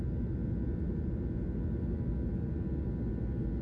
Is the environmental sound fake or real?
real